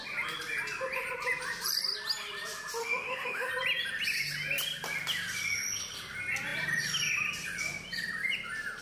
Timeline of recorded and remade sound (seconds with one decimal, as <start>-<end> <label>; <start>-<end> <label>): 0.0-2.8 recorded; 2.8-3.5 remade; 3.5-8.8 recorded